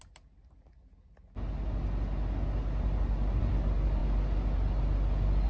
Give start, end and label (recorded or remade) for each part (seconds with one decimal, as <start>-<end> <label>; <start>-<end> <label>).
0.0-5.5 recorded